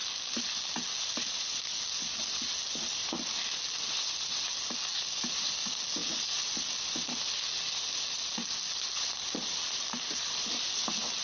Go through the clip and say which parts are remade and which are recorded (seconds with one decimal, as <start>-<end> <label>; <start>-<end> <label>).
0.0-11.2 recorded